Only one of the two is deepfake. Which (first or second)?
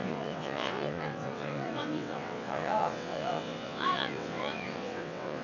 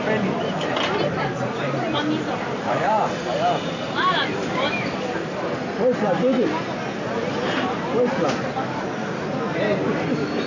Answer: first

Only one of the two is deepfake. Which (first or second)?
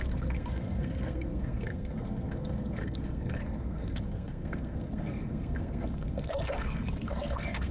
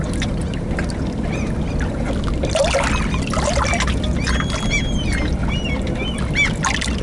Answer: first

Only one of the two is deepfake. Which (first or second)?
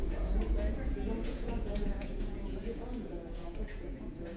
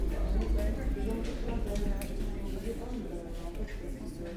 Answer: first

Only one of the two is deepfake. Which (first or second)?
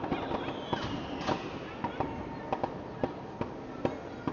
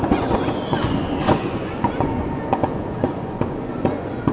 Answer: second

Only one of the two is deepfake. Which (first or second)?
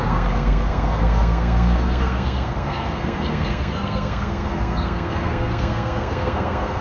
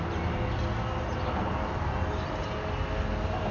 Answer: first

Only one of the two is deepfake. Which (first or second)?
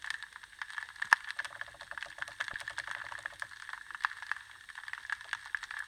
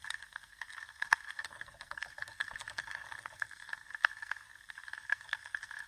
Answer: second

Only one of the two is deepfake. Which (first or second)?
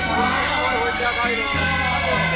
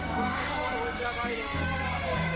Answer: second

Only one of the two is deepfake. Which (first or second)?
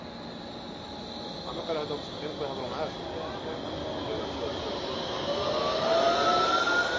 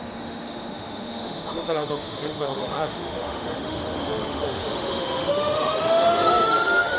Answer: second